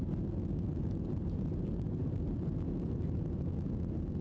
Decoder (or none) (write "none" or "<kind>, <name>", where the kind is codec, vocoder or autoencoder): none